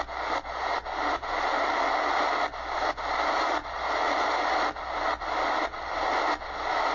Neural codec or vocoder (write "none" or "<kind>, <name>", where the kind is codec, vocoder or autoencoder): none